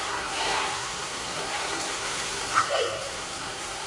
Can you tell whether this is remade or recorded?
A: remade